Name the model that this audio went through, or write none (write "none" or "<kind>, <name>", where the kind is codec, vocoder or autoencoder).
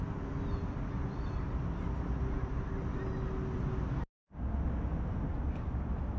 none